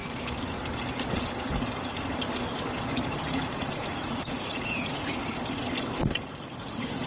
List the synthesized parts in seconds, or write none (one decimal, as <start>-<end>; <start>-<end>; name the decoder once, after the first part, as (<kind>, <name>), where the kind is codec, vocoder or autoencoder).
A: 3.1-5.2 (vocoder, Vocos); 6.6-7.1